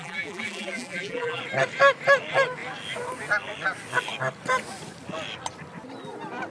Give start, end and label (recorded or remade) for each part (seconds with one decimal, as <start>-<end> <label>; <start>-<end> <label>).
0.0-1.4 remade; 1.4-6.5 recorded